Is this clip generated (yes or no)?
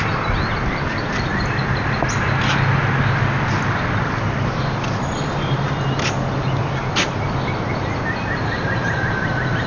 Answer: no